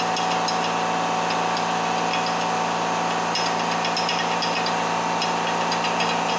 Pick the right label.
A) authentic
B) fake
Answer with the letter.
A